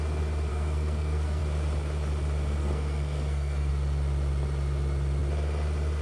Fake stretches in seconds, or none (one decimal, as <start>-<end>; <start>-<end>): 0.5-1.4; 2.6-3.7